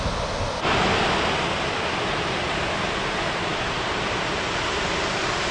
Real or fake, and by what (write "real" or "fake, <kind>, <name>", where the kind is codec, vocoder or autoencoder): real